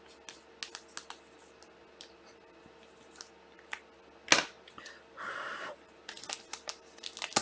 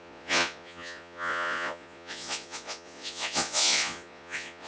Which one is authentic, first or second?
first